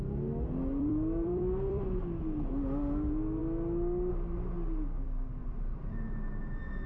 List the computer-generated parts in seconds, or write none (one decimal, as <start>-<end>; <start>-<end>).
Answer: 0.7-2.0; 5.4-6.0

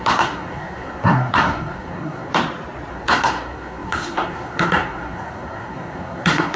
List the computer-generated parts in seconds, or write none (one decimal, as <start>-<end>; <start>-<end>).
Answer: 0.0-2.3; 2.9-6.6

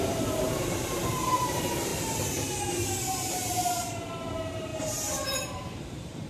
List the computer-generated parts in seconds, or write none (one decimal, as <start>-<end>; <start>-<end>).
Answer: 0.0-1.9; 2.6-6.3

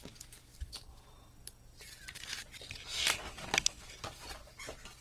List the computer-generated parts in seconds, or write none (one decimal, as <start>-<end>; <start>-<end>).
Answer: none